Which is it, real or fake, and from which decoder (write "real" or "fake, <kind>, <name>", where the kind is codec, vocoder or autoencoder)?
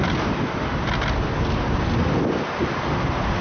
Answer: real